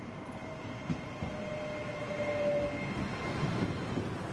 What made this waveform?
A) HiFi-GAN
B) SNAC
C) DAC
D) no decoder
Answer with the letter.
D